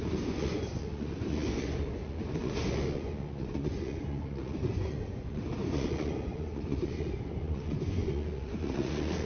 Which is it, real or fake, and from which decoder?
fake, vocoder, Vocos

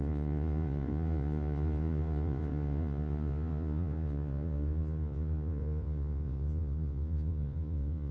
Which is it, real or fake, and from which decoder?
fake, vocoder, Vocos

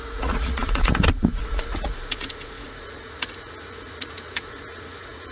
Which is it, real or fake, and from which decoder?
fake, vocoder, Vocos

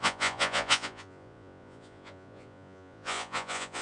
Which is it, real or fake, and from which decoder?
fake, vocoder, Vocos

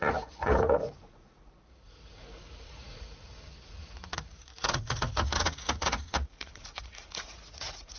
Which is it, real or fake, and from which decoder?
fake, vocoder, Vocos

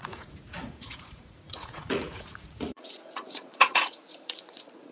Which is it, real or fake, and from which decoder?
fake, vocoder, Vocos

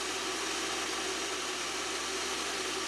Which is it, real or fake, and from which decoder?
real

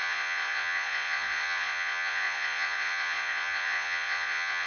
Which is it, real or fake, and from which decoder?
fake, vocoder, Vocos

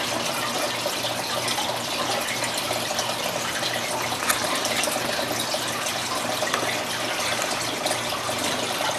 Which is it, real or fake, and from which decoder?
real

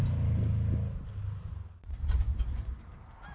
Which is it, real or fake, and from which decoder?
real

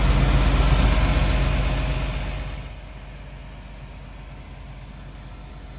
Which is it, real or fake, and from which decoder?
real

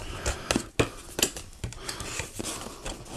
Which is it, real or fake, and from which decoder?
real